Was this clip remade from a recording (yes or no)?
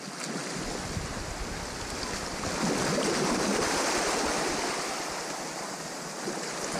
no